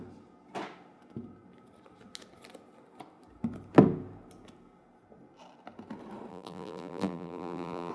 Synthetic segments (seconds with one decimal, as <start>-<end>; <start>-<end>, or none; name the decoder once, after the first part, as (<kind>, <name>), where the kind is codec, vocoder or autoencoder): 6.3-7.9 (vocoder, BigVGAN v2)